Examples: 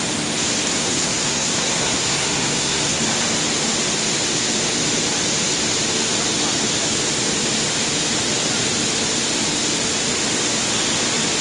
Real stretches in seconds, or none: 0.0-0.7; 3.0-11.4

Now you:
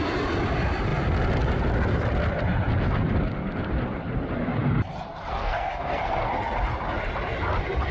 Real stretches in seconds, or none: 0.0-5.3; 6.3-7.9

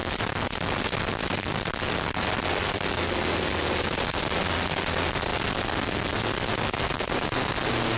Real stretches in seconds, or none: 0.0-8.0

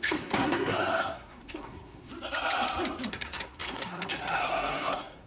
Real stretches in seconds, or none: 2.1-3.1

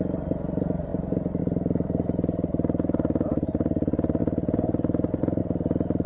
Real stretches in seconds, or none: 0.0-6.1

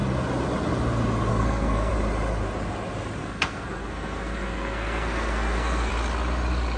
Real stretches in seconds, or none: 0.0-1.3; 1.9-3.2; 5.9-6.8

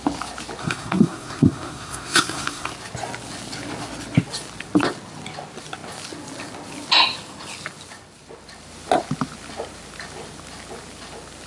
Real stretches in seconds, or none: 0.0-0.6; 2.7-11.5

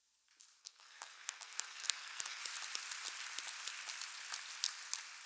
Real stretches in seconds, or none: 0.0-0.6; 2.4-5.3